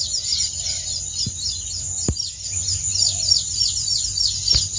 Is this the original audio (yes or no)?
yes